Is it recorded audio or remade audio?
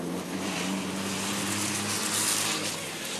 recorded